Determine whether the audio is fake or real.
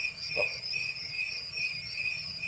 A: fake